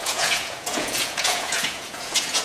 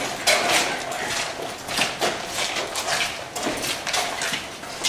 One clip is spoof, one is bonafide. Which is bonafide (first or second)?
second